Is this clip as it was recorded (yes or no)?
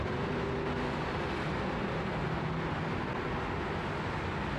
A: yes